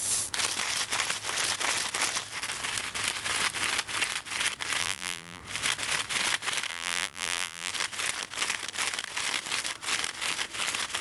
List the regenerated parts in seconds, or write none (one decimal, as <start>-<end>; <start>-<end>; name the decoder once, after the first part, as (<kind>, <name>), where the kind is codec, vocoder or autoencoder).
4.8-5.4 (vocoder, BigVGAN v2); 6.7-7.7

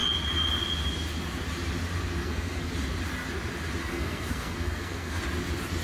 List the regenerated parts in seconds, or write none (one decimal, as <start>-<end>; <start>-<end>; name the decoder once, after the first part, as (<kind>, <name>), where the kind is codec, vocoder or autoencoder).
2.2-2.7 (codec, SNAC); 3.8-5.2

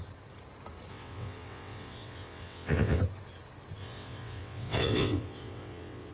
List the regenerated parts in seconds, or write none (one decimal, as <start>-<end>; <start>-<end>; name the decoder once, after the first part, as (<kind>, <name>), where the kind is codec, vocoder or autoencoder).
0.9-3.0 (vocoder, WaveNeXt); 3.8-6.1

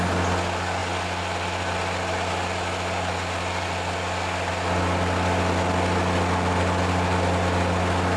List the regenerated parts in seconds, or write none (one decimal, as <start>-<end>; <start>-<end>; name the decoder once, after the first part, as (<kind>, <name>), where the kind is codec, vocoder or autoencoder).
none

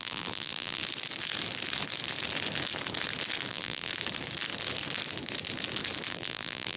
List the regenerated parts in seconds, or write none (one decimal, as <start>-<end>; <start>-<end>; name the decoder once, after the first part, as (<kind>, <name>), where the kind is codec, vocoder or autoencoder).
0.0-0.8 (vocoder, BigVGAN v2); 3.5-3.9; 6.1-6.8

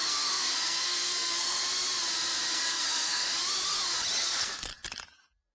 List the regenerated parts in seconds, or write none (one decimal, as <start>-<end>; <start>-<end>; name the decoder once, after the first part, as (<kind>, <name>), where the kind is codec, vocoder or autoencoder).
0.0-1.6 (codec, SNAC); 2.5-3.3; 4.2-4.7

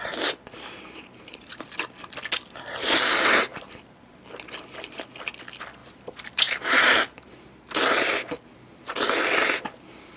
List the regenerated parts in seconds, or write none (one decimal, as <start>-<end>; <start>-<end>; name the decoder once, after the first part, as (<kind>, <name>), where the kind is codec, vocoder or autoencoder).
3.5-4.1 (vocoder, BigVGAN v2); 5.8-7.3

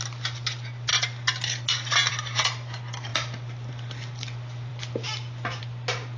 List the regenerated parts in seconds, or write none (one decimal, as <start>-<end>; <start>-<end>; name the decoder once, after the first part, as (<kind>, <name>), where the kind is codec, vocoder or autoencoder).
none